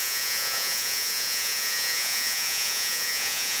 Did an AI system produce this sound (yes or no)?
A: yes